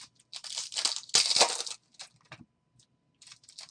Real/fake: real